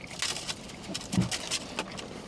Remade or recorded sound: recorded